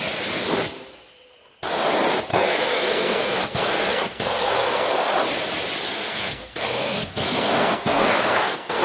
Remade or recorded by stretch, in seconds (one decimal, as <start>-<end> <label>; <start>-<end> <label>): 0.0-2.3 recorded; 2.3-5.1 remade; 5.1-5.9 recorded; 5.9-8.8 remade